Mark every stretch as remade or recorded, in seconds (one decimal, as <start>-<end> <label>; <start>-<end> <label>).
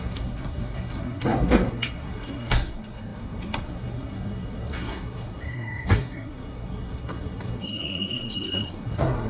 0.0-9.3 remade